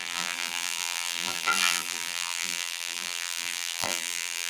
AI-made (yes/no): yes